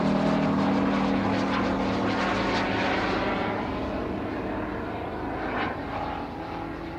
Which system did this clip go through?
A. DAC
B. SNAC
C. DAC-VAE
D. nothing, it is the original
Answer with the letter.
D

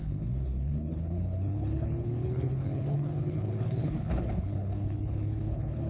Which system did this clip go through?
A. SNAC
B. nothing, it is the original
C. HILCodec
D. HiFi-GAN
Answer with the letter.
C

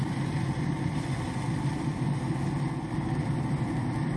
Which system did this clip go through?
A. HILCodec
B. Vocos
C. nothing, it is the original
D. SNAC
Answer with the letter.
C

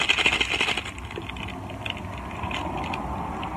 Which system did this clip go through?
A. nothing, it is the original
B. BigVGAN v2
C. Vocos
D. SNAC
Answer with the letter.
A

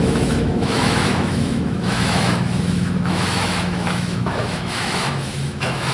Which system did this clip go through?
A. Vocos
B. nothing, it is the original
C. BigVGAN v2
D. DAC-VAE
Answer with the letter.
D